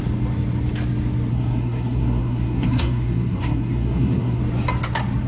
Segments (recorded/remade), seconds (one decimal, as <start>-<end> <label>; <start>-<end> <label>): 0.0-1.3 recorded; 1.3-4.4 remade; 4.4-5.3 recorded